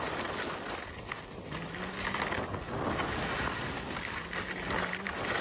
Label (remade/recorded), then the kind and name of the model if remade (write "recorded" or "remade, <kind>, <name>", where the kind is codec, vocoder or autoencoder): recorded